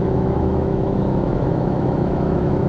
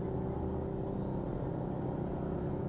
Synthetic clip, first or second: first